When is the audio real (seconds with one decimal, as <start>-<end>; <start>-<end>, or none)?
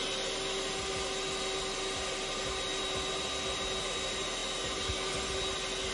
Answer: 0.0-5.9